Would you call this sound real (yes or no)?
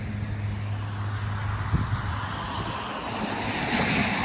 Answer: yes